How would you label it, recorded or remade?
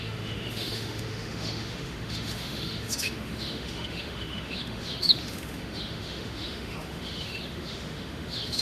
remade